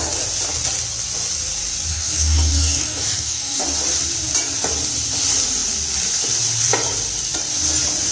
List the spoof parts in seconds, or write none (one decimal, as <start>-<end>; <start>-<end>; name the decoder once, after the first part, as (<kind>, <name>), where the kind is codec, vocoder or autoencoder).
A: 1.9-3.6 (codec, DAC)